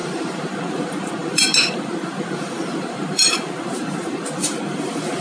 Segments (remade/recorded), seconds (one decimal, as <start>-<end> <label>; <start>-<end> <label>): 0.0-5.2 remade